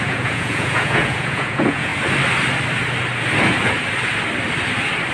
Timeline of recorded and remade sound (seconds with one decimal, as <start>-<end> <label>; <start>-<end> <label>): 0.0-1.9 remade; 1.9-5.1 recorded